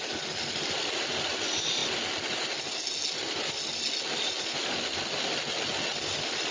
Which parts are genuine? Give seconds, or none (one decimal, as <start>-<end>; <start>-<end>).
0.0-6.5